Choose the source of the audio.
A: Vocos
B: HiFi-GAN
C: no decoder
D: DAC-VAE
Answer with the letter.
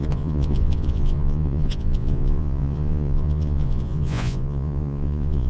A